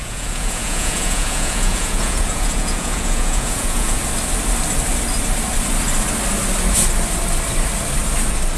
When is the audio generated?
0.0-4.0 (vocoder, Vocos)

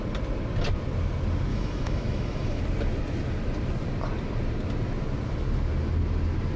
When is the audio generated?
1.5-2.6 (autoencoder, DAC-VAE)

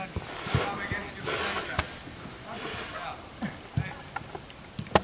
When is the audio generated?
none

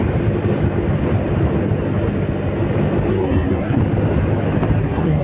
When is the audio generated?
3.1-3.8 (codec, SNAC); 4.8-5.2

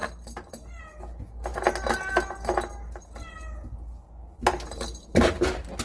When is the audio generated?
none

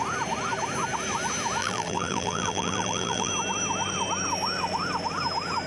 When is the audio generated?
1.6-3.3 (vocoder, BigVGAN v2)